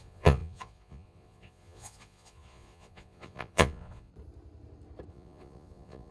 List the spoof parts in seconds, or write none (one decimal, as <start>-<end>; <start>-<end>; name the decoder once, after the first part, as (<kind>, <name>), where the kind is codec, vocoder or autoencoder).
0.0-4.1 (vocoder, Vocos); 5.1-6.1